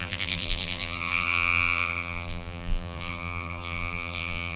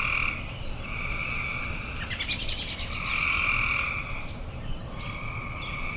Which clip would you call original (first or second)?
second